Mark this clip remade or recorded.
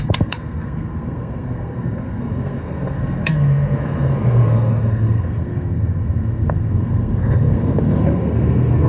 remade